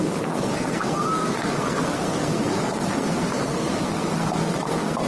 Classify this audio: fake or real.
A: fake